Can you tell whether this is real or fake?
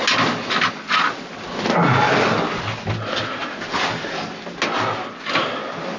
real